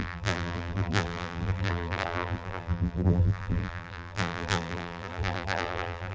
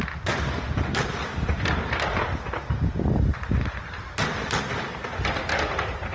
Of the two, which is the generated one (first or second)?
first